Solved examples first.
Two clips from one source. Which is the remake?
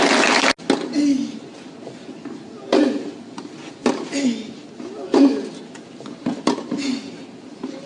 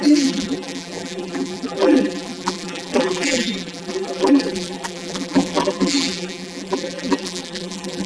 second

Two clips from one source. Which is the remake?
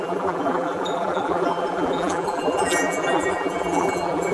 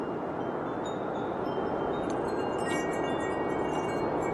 first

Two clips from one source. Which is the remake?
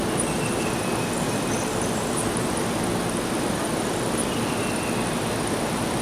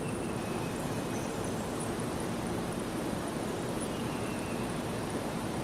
second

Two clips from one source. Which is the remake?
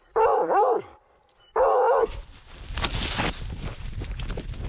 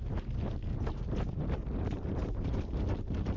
first